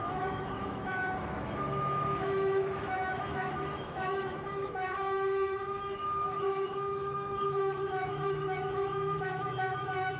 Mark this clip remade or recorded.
remade